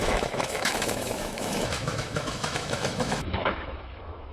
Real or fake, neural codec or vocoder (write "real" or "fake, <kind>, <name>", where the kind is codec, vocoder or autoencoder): fake, autoencoder, DAC-VAE